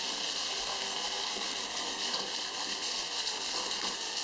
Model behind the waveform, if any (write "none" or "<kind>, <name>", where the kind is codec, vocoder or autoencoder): codec, SNAC